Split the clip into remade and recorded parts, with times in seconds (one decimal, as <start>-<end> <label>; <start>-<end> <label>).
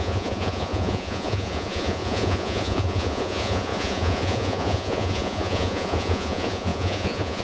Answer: 0.0-7.4 remade